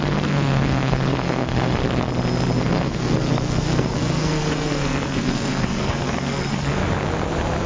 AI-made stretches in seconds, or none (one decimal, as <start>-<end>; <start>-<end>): 0.0-1.8; 2.6-6.8